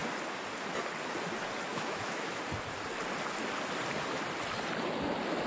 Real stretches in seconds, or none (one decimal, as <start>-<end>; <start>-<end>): 0.0-1.7; 2.4-5.5